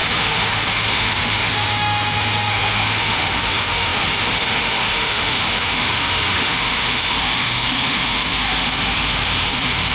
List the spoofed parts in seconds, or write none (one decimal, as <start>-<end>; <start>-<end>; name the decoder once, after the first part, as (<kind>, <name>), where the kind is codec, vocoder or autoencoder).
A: 0.0-9.9 (autoencoder, DAC-VAE)